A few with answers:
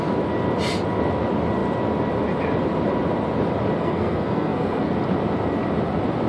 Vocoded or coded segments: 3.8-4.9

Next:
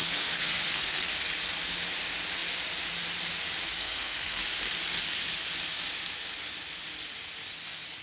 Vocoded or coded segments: 0.0-1.1; 3.8-4.4

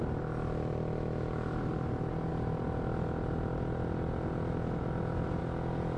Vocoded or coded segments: none

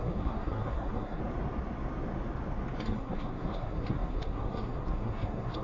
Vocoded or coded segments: 0.0-1.2; 2.8-5.6